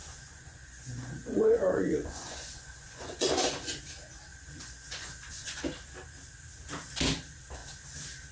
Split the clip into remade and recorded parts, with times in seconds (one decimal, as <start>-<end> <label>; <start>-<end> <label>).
0.0-3.8 remade; 3.8-4.3 recorded; 4.3-5.6 remade; 5.6-8.3 recorded